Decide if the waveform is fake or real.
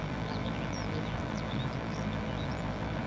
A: fake